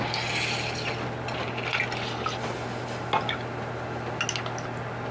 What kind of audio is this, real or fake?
real